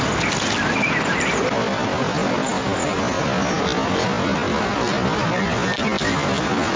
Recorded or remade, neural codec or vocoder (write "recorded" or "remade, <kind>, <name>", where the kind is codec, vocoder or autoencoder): recorded